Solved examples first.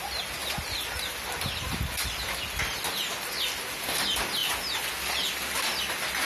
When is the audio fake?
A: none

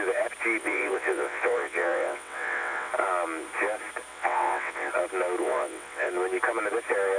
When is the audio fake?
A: 0.6-2.9 (vocoder, WaveNeXt); 4.1-4.9; 5.4-6.1

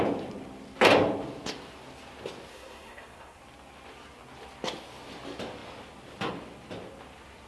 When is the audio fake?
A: 2.5-3.4 (codec, SNAC)

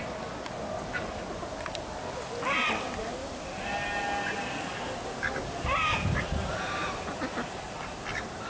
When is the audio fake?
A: none